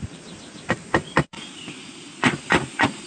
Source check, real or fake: fake